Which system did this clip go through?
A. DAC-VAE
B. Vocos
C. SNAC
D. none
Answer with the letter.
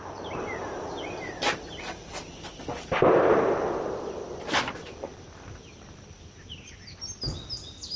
D